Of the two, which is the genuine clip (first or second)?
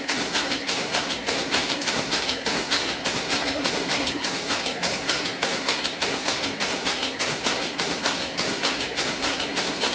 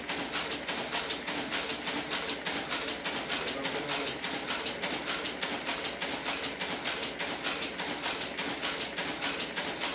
second